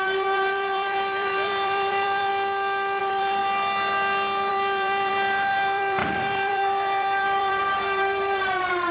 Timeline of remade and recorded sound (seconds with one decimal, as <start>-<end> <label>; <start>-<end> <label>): 0.0-2.3 remade; 2.3-3.0 recorded; 3.0-3.4 remade; 3.4-4.5 recorded; 4.5-8.9 remade